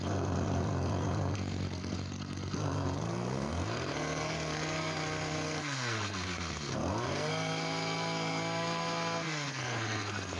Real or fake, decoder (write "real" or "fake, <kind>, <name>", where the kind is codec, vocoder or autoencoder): fake, codec, SNAC